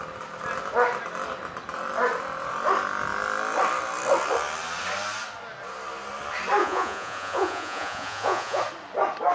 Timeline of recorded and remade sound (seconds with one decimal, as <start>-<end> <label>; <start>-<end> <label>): 0.0-6.6 recorded; 6.6-8.6 remade; 8.6-9.3 recorded

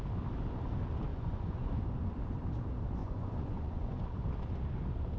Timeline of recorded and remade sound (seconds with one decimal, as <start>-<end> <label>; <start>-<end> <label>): 0.0-1.1 recorded; 1.1-1.7 remade; 1.7-3.0 recorded; 3.0-4.0 remade; 4.0-5.2 recorded

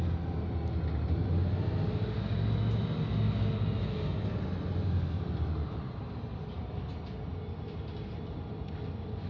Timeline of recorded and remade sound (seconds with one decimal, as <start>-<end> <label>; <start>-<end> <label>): 0.0-9.3 recorded

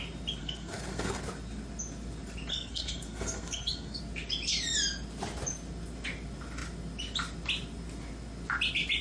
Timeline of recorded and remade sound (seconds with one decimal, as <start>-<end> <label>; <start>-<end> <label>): 0.0-0.4 recorded; 0.4-1.2 remade; 1.2-2.5 recorded; 2.5-4.0 remade; 4.0-9.0 recorded

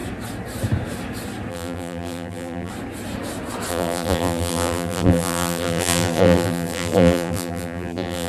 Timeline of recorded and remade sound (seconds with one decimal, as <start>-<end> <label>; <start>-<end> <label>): 0.0-1.5 recorded; 1.5-2.7 remade; 2.7-3.7 recorded; 3.7-8.3 remade

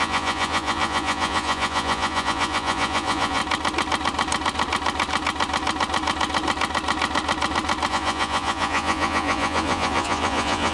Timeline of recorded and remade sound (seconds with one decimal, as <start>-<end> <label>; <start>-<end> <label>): 0.0-3.4 remade; 3.4-7.9 recorded; 7.9-10.7 remade

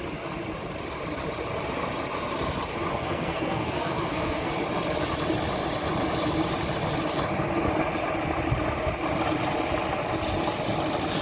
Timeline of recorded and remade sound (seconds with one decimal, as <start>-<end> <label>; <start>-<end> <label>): 0.0-2.9 recorded; 2.9-4.5 remade; 4.5-11.2 recorded